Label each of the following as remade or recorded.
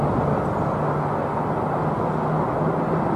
recorded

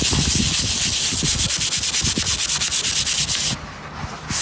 recorded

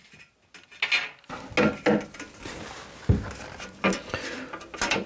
recorded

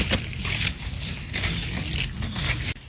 recorded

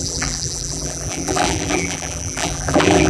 remade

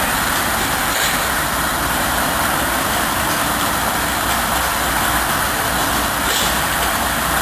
remade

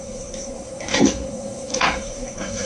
remade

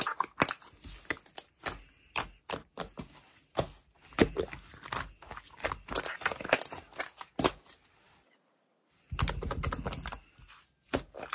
recorded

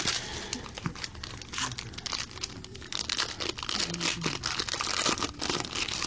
recorded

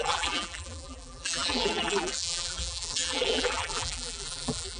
remade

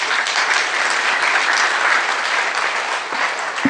recorded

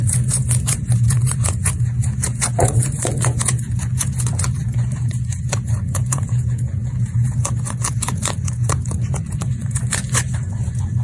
remade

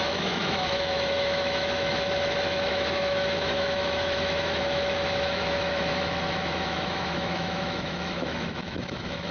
remade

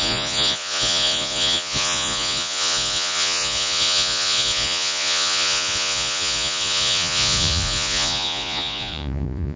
remade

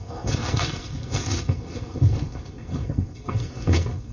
remade